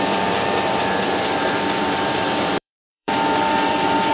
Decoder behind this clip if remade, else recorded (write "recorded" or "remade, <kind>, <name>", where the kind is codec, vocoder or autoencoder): remade, vocoder, BigVGAN v2